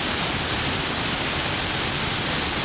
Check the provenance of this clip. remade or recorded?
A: recorded